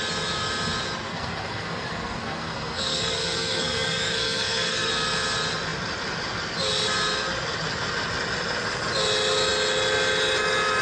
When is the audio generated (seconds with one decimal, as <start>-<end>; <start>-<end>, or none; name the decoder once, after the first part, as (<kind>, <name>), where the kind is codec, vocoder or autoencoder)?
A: 1.1-4.9 (codec, SNAC)